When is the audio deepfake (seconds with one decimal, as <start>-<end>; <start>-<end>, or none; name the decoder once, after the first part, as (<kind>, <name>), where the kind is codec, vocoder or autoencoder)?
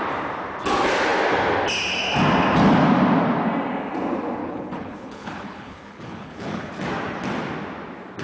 4.4-6.7 (codec, HILCodec)